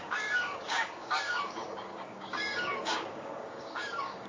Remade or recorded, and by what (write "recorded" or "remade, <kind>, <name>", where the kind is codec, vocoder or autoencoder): remade, codec, DAC